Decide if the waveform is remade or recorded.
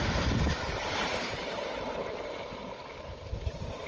remade